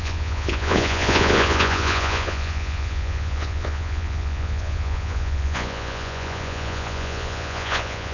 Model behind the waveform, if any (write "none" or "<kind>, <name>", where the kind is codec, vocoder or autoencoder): vocoder, Vocos